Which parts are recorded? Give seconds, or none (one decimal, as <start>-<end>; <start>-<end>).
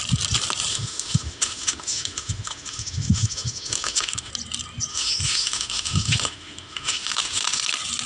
0.0-0.7; 4.3-4.9; 7.6-8.1